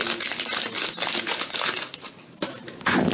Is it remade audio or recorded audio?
recorded